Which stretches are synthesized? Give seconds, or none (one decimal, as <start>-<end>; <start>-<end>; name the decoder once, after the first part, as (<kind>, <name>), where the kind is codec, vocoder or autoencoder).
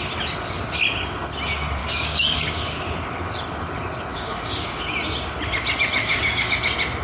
1.8-2.8 (codec, DAC); 4.1-4.8; 6.0-6.6